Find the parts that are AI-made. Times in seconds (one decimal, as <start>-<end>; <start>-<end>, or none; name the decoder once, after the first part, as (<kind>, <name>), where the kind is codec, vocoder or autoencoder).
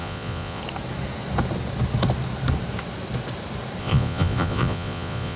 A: 0.0-0.6 (vocoder, Vocos); 3.8-5.4